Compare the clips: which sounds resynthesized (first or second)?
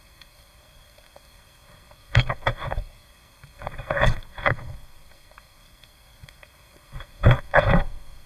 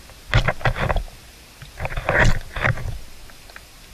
first